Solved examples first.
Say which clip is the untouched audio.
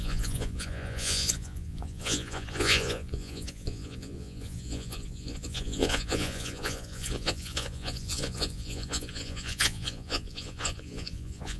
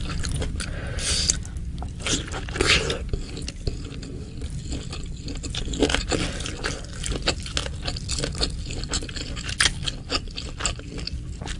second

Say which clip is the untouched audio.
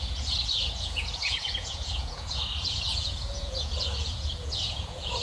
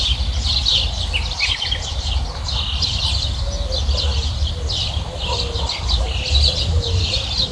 second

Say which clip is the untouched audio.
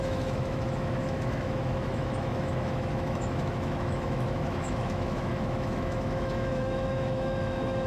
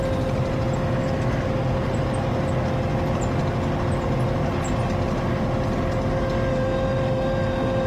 second